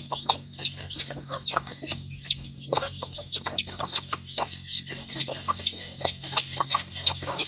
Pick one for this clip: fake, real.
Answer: fake